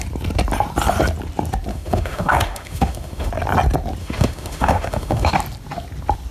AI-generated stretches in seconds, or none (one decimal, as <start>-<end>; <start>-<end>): 1.7-3.3; 4.0-5.3